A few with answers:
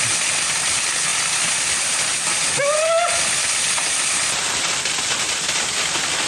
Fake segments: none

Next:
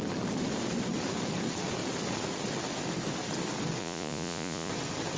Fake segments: 3.8-4.7 (vocoder, Vocos)

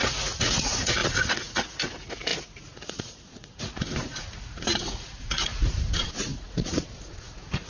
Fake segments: 0.0-7.7 (vocoder, Vocos)

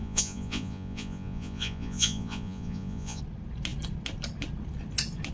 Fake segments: 0.0-3.2 (vocoder, Vocos)

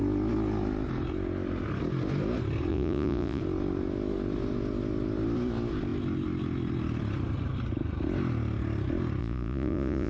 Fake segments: 2.7-3.4 (vocoder, Vocos); 9.2-10.1

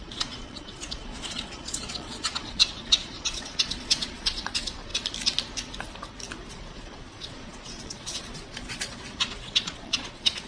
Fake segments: 0.0-4.9 (vocoder, Vocos); 6.5-10.5

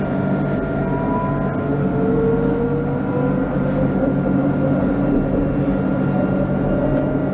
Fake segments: none